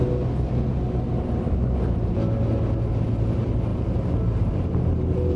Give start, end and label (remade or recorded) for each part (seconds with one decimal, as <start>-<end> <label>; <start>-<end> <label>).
0.0-5.4 recorded

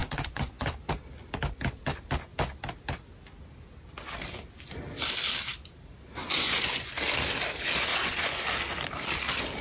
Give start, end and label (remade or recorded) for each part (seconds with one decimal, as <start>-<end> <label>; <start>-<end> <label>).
0.0-0.9 remade; 0.9-6.2 recorded; 6.2-6.9 remade; 6.9-7.9 recorded; 7.9-8.4 remade; 8.4-9.6 recorded